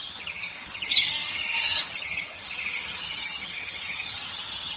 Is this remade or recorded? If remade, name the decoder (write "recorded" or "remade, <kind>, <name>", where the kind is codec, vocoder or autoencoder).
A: remade, vocoder, HiFi-GAN